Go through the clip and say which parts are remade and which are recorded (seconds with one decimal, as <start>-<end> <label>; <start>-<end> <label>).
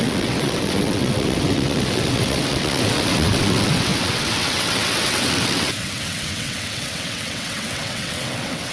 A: 0.0-8.7 remade